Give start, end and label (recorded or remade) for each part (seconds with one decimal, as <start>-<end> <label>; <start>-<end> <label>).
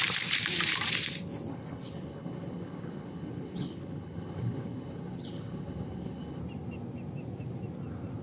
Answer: 0.0-1.5 recorded; 1.5-6.4 remade; 6.4-8.2 recorded